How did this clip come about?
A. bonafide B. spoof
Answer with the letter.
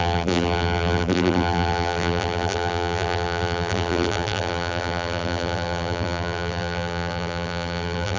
B